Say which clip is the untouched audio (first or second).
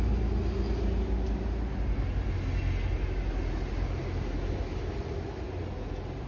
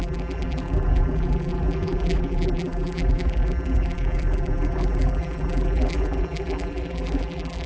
first